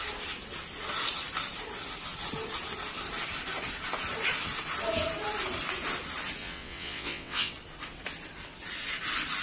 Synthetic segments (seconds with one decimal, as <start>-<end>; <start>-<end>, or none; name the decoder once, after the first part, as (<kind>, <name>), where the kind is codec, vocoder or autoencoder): 6.4-7.5 (vocoder, WaveNeXt)